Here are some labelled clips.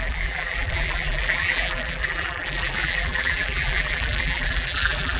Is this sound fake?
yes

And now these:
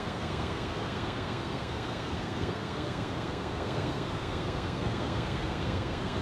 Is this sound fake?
yes